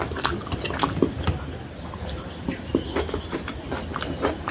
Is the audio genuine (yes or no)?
yes